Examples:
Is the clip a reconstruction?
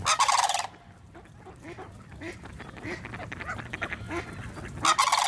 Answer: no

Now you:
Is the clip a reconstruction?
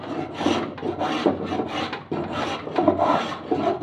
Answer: no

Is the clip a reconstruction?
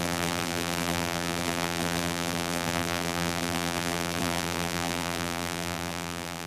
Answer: yes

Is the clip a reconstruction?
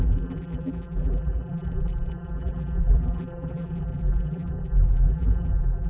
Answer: yes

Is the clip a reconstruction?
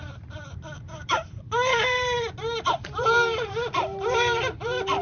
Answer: yes